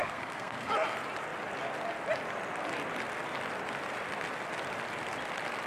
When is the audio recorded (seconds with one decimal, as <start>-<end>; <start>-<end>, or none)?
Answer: 0.7-5.7